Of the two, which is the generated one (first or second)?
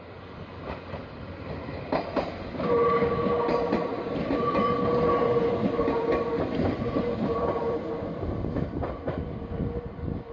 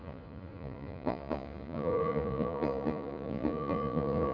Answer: second